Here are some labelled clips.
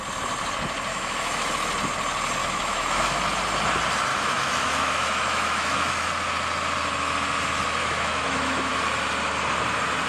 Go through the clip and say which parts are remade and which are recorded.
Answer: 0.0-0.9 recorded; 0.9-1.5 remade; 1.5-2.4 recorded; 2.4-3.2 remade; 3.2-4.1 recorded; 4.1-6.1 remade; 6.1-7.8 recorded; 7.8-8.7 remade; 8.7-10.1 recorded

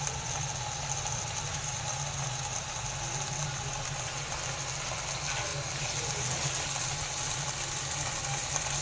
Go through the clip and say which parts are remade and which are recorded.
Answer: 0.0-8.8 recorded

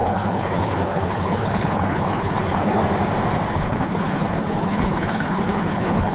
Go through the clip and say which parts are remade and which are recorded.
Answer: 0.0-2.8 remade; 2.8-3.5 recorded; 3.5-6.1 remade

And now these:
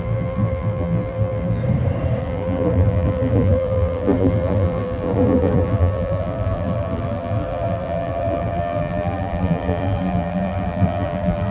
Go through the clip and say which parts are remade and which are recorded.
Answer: 0.0-1.6 remade; 1.6-2.2 recorded; 2.2-11.5 remade

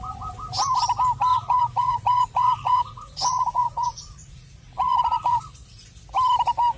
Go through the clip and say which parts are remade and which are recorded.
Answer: 0.0-1.3 recorded; 1.3-5.4 remade; 5.4-6.8 recorded

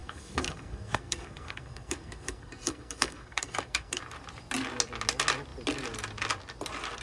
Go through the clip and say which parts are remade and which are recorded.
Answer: 0.0-4.0 remade; 4.0-7.0 recorded